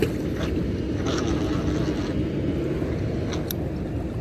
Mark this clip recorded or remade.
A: recorded